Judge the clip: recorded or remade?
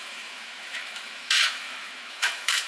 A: remade